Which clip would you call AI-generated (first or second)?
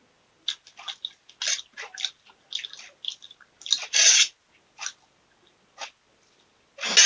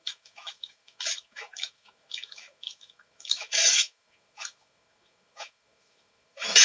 second